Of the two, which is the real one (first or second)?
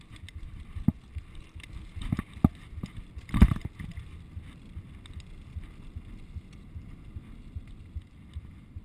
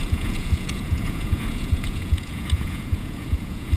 first